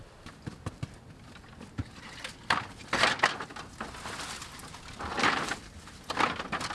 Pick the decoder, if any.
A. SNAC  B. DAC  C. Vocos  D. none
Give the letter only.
D